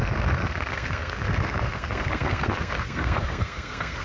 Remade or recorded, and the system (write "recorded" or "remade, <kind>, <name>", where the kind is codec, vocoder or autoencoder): remade, codec, SNAC